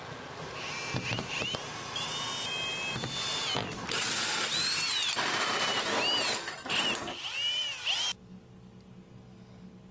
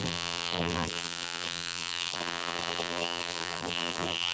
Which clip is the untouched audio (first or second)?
first